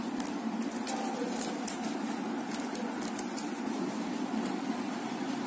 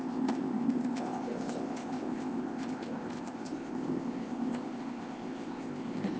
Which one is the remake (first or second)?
second